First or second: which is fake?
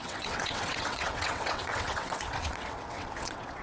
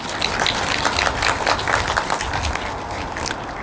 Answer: first